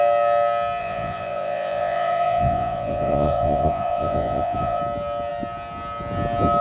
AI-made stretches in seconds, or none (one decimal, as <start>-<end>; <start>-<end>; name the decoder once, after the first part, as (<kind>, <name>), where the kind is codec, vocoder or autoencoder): 0.8-4.8 (vocoder, Vocos)